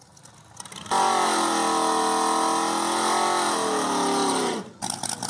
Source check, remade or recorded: recorded